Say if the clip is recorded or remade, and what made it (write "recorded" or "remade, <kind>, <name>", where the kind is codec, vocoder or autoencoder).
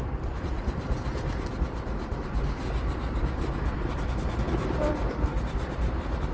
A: remade, vocoder, BigVGAN v2